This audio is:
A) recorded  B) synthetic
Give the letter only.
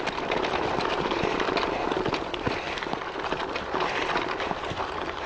B